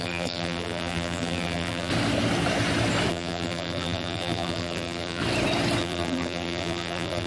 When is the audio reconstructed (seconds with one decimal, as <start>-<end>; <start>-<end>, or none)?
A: 0.0-1.9; 3.1-5.2; 5.8-7.3